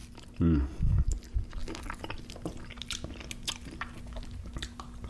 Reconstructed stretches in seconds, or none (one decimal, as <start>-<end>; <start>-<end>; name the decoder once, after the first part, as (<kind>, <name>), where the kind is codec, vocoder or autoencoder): 1.1-1.6 (vocoder, BigVGAN v2)